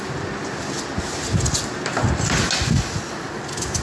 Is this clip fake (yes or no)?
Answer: no